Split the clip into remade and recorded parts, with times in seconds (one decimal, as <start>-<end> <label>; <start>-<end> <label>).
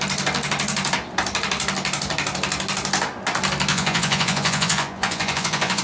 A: 0.0-3.7 recorded; 3.7-5.8 remade